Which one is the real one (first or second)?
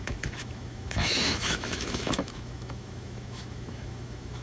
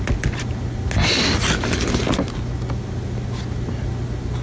second